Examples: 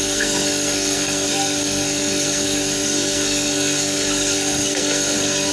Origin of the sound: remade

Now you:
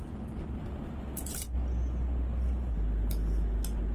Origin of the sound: recorded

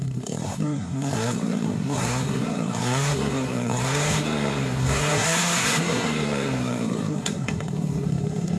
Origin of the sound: remade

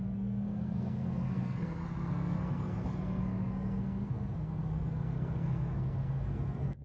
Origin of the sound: remade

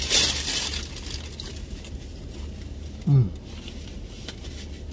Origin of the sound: recorded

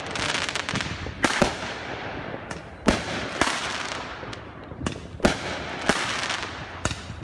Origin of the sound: recorded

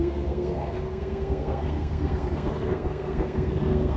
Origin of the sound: remade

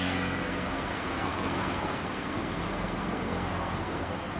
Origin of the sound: remade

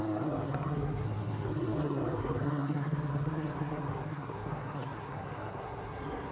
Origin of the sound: remade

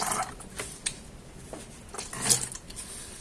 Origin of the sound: recorded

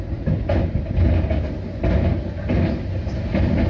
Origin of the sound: recorded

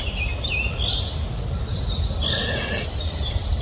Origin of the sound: recorded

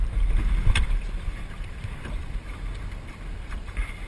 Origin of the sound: recorded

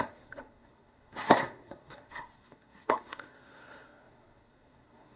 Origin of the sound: remade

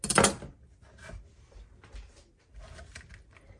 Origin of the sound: recorded